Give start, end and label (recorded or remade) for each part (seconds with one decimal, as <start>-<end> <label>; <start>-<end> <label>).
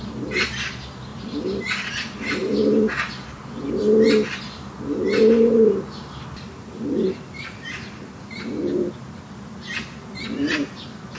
0.0-1.1 recorded; 1.1-3.7 remade; 3.7-5.5 recorded; 5.5-8.3 remade; 8.3-11.2 recorded